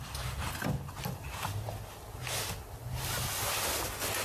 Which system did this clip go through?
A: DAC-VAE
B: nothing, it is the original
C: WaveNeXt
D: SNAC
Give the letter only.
B